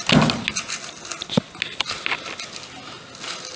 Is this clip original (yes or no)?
yes